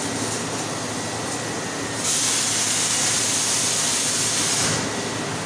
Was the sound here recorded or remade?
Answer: recorded